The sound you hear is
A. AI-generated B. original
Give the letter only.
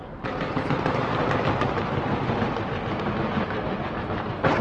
B